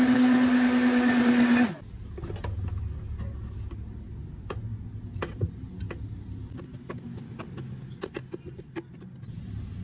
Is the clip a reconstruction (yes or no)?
no